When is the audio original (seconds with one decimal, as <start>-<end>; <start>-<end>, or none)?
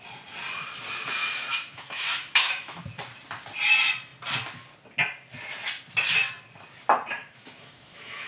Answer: 0.0-1.2; 2.8-7.2